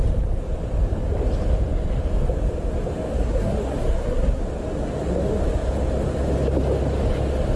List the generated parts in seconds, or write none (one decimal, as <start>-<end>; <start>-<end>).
3.1-4.4